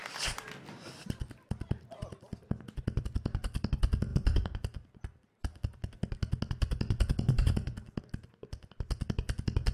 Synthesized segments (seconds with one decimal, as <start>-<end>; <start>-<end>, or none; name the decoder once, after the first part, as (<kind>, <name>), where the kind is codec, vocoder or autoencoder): none